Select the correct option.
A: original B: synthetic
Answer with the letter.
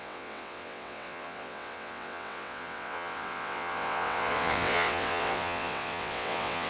B